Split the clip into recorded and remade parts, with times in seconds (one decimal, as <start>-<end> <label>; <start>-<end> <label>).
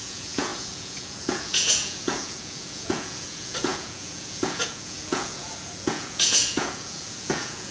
0.0-7.7 remade